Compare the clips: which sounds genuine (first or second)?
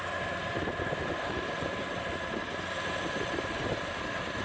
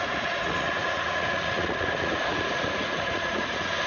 first